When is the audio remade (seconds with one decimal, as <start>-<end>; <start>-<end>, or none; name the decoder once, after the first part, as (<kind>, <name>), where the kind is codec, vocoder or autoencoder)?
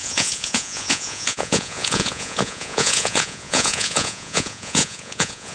0.0-5.5 (vocoder, Vocos)